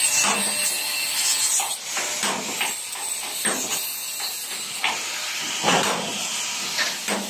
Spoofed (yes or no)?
no